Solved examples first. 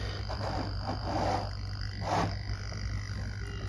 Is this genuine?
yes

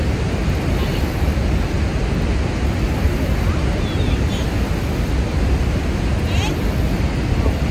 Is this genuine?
yes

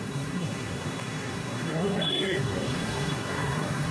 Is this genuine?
no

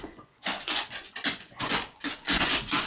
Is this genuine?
no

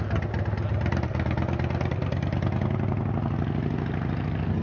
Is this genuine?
yes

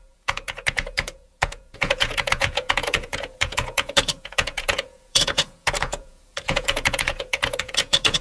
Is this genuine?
no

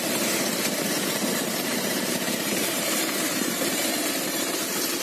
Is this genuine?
no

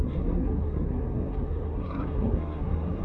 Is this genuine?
no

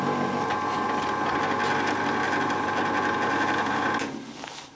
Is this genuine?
yes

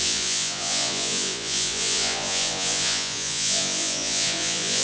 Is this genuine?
no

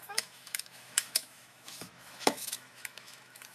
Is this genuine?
no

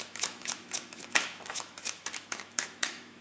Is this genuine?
no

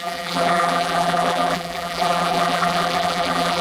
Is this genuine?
no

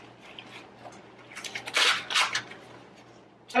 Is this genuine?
yes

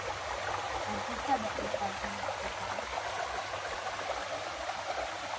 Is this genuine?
yes